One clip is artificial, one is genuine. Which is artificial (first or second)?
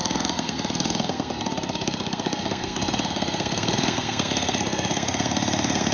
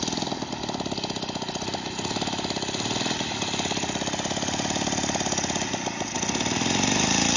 first